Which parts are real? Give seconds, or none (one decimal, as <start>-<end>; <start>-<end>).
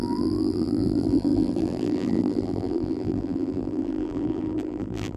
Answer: none